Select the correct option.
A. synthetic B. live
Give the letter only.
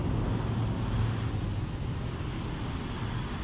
B